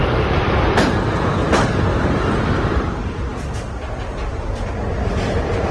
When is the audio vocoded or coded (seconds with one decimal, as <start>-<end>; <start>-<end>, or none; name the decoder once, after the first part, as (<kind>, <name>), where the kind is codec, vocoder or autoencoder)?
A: 0.0-3.3 (vocoder, BigVGAN v2); 4.3-5.7